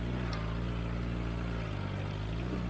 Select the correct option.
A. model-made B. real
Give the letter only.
B